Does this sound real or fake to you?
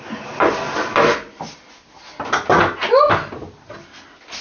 real